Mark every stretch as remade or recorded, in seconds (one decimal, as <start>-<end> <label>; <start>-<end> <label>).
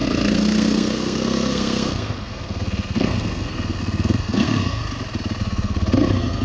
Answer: 0.0-4.8 remade; 4.8-5.4 recorded; 5.4-6.4 remade